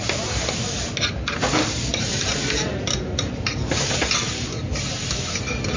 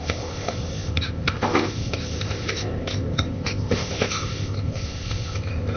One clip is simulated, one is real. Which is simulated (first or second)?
second